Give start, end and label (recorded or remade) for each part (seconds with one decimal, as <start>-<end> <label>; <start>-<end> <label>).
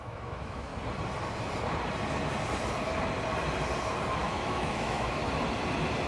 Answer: 0.0-0.7 remade; 0.7-4.2 recorded; 4.2-5.2 remade; 5.2-6.1 recorded